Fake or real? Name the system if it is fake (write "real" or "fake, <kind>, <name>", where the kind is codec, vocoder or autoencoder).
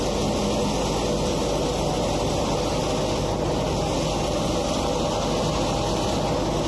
real